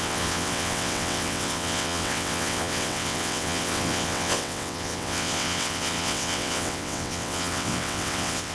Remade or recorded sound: remade